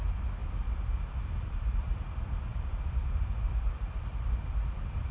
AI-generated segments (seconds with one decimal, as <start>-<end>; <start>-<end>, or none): none